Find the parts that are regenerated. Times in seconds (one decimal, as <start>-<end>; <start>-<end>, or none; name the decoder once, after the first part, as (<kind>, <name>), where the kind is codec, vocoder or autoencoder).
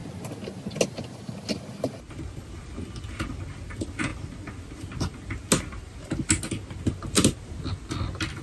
none